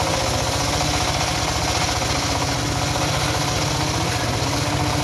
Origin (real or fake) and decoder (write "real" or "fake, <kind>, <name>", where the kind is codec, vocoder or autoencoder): real